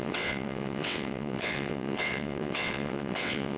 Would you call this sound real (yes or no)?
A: no